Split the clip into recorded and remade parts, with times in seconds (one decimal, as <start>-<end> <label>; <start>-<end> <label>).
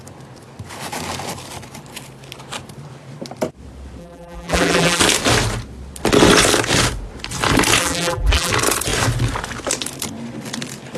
0.0-4.0 recorded; 4.0-5.0 remade; 5.0-7.8 recorded; 7.8-8.5 remade; 8.5-11.0 recorded